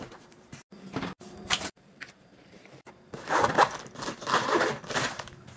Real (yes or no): no